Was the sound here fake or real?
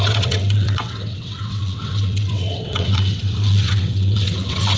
fake